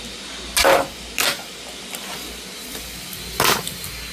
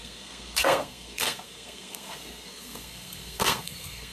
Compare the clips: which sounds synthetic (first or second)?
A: second